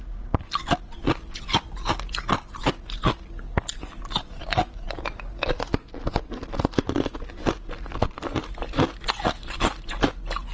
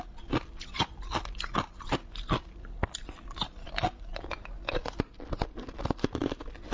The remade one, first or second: second